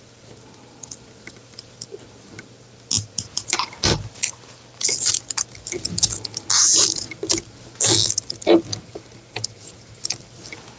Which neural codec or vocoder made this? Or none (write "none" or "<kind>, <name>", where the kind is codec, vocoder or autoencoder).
none